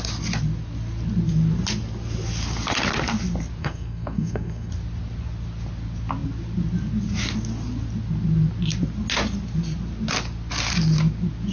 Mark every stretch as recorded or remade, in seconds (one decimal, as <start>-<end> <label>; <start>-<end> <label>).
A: 0.0-3.6 recorded; 3.6-4.7 remade; 4.7-11.5 recorded